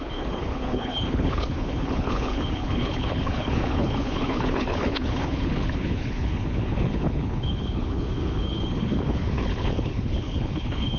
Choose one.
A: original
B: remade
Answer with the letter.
B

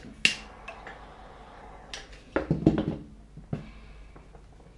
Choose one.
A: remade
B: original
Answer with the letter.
B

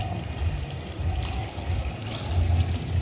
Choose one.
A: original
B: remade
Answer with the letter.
A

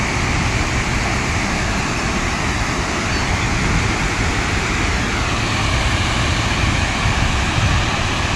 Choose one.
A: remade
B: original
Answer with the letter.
B